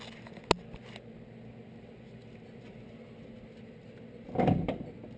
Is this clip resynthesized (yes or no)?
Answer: no